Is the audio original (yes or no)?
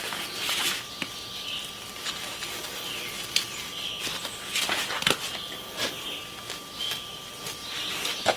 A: yes